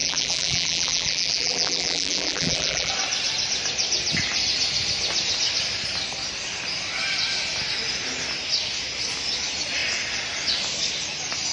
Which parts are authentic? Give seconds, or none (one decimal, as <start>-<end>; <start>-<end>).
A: 2.9-11.5